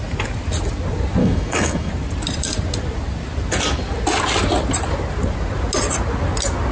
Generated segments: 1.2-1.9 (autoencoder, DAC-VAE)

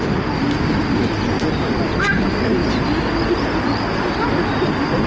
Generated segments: none

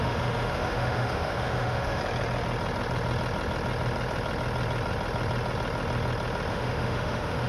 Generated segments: 0.0-2.0 (autoencoder, DAC-VAE); 6.5-7.5

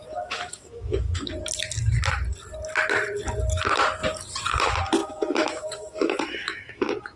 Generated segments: 0.0-1.3 (autoencoder, DAC-VAE); 5.0-7.2